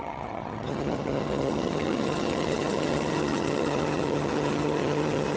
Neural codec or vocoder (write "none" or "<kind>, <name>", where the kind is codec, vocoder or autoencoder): vocoder, HiFi-GAN